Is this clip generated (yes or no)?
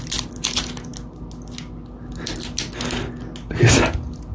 no